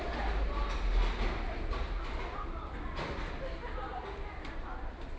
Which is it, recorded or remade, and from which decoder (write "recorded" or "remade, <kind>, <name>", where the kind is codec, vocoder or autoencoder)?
recorded